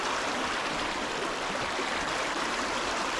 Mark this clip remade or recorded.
recorded